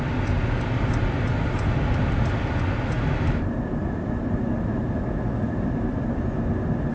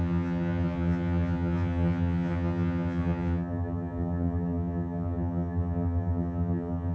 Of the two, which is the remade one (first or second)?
second